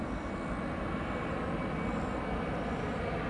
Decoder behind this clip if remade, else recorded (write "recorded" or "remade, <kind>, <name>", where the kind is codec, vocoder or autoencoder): recorded